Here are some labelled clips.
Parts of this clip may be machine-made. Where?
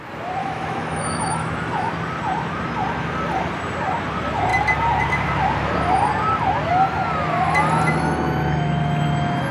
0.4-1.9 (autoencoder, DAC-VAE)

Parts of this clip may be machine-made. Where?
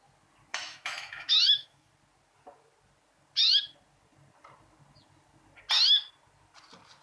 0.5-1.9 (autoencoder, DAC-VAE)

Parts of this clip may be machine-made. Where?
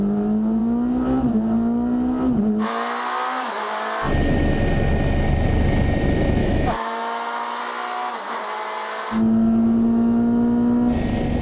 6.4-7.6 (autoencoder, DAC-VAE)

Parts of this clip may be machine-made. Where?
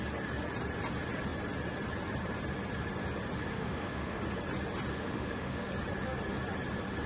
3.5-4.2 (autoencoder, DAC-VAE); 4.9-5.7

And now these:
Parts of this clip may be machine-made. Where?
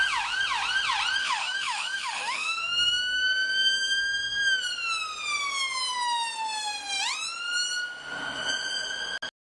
1.2-4.6 (autoencoder, DAC-VAE)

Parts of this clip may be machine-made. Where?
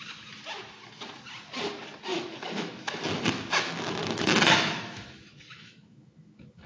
2.1-3.0 (autoencoder, DAC-VAE); 4.0-6.7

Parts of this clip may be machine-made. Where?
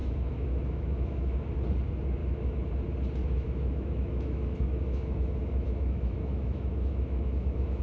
0.0-1.5 (autoencoder, DAC-VAE); 2.2-2.7; 3.2-7.8